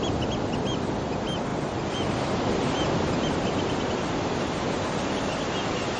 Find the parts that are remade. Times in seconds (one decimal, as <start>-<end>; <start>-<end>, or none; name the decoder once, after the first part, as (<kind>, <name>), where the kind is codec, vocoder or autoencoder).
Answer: none